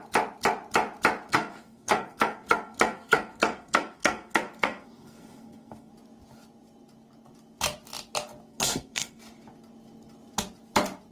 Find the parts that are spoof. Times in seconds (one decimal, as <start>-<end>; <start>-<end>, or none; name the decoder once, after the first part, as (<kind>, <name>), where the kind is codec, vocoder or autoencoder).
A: 1.3-5.9 (codec, SNAC); 8.5-9.2